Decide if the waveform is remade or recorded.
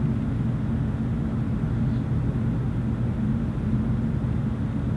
recorded